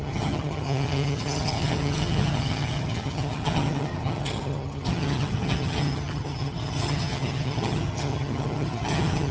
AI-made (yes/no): yes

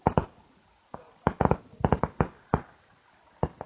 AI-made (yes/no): no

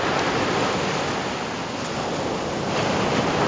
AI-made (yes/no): no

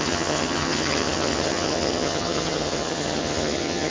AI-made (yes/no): yes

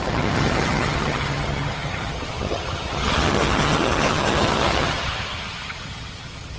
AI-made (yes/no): yes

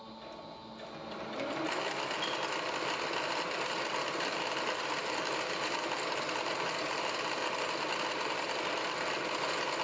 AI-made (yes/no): no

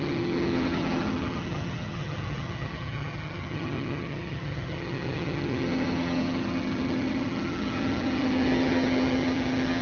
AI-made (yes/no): yes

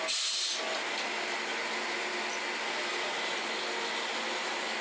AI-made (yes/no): no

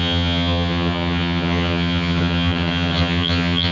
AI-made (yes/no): yes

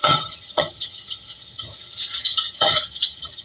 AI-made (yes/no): yes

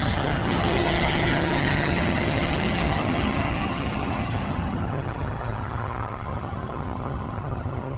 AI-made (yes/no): yes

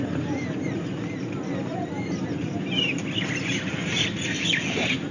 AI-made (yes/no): no